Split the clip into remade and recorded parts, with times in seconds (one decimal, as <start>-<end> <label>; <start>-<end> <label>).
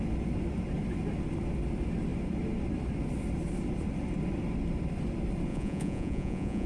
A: 0.0-5.5 recorded; 5.5-6.7 remade